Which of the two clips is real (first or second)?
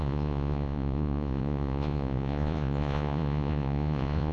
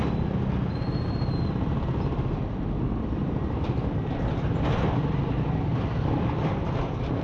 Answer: second